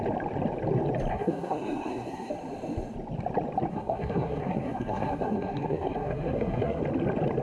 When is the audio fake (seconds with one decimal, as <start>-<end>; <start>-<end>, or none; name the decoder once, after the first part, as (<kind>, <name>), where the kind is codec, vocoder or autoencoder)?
1.1-2.3 (codec, SNAC); 3.7-6.8